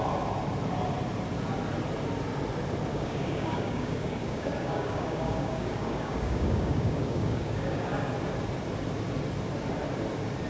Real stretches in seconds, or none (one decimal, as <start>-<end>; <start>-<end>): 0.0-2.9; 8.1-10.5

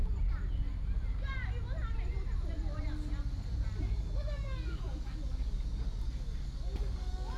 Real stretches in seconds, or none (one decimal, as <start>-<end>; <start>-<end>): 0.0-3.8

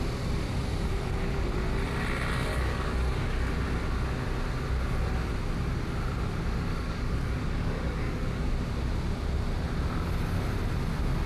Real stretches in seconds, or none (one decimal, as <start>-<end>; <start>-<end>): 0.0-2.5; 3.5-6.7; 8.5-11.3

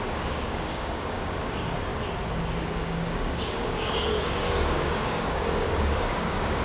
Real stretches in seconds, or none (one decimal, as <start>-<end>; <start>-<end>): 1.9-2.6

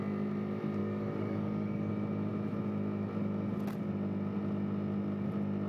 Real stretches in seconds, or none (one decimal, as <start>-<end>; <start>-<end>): 0.0-0.8; 1.9-5.7